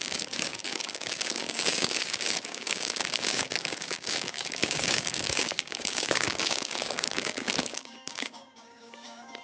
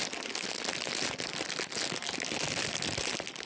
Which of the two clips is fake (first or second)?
first